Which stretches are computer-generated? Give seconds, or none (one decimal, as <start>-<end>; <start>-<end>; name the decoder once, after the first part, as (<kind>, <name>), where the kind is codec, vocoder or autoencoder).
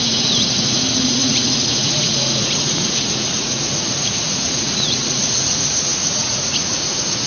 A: 0.0-7.3 (vocoder, Vocos)